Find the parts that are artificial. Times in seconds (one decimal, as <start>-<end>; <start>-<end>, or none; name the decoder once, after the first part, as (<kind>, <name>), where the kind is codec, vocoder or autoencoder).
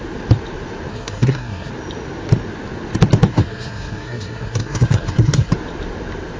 0.9-1.7 (codec, SNAC); 3.3-5.5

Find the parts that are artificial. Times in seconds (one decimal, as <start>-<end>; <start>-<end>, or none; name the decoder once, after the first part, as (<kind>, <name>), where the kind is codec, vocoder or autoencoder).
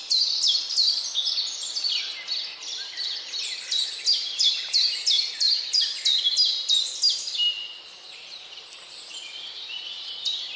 none